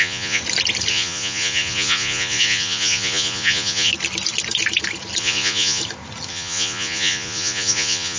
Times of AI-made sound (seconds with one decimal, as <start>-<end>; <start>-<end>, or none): 0.0-0.4; 0.9-3.9; 5.2-5.8; 6.3-8.2